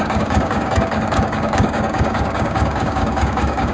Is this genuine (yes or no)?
no